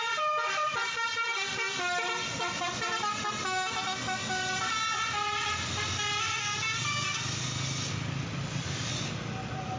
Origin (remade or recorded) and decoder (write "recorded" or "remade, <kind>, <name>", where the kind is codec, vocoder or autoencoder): recorded